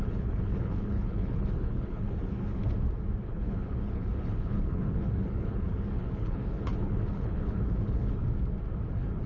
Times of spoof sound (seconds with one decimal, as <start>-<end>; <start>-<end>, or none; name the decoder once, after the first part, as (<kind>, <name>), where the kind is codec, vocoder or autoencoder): 0.0-2.6 (codec, HILCodec); 3.2-8.2; 8.9-9.3